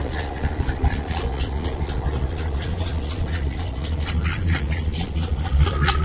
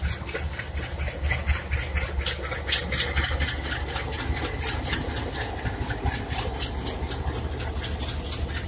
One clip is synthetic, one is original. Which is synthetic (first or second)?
first